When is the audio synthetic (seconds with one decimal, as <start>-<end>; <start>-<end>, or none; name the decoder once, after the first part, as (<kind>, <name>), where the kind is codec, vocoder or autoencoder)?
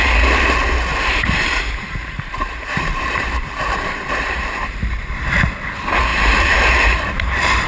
0.9-5.5 (vocoder, BigVGAN v2); 6.1-7.7